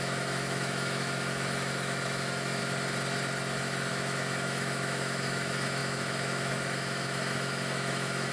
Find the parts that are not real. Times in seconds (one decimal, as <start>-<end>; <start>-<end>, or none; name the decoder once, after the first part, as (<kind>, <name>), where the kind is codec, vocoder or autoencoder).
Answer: 0.0-2.6 (autoencoder, DAC-VAE); 3.9-8.3